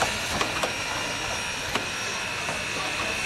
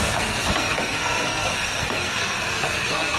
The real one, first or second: first